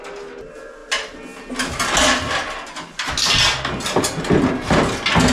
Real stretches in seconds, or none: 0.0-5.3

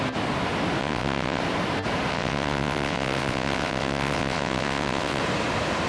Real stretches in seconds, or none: 0.0-0.8; 1.4-2.1; 5.2-5.9